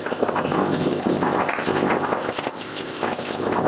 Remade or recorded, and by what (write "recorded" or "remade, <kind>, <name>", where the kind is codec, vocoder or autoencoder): remade, codec, ZipCodec